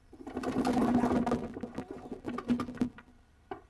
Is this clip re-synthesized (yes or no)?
no